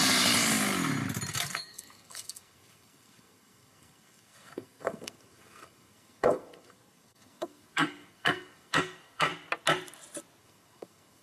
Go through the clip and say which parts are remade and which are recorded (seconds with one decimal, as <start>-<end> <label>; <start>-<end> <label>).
0.0-1.3 recorded; 1.3-9.3 remade; 9.3-10.4 recorded; 10.4-11.2 remade